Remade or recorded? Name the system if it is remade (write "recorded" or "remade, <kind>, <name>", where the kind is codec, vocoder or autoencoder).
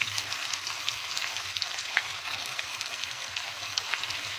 remade, codec, SNAC